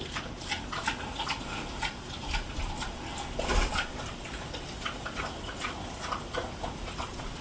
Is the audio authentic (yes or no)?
yes